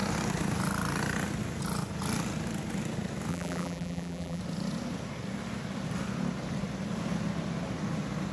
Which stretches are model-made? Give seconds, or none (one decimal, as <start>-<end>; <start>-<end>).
3.3-4.4